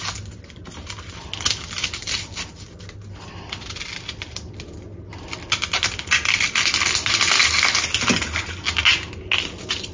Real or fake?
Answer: real